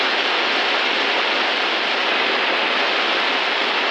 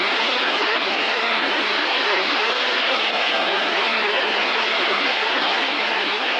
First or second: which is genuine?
first